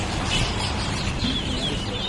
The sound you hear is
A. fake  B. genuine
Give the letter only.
A